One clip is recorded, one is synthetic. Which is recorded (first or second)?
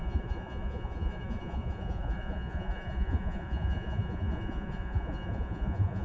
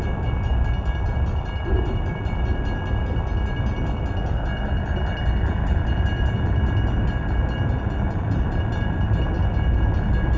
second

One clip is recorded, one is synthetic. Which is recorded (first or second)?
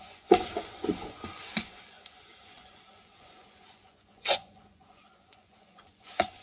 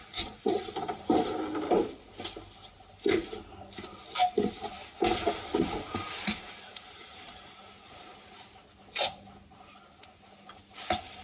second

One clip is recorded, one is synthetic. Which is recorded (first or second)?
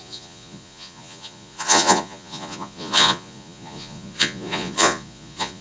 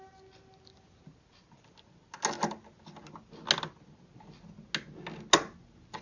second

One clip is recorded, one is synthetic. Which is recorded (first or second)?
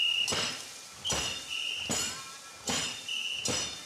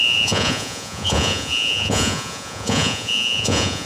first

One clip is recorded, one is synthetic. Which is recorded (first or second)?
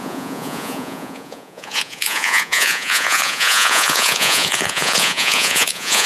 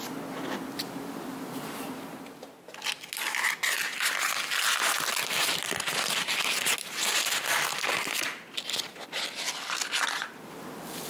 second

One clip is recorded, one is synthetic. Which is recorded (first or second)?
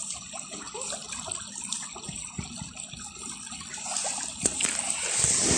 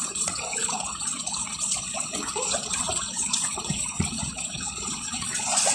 first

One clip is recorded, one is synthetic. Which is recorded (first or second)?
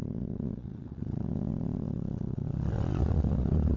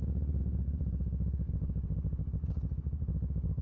second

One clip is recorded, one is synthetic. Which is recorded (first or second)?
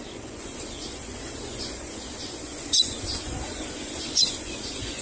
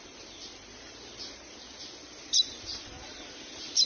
second